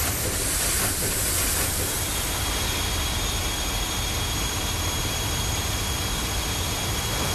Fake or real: real